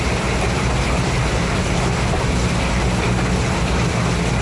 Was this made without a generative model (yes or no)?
yes